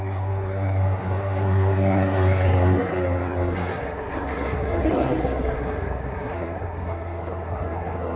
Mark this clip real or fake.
fake